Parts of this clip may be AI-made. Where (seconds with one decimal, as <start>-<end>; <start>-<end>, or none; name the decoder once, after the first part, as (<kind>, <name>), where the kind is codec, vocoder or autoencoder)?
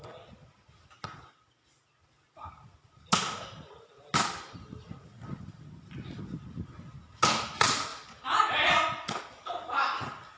none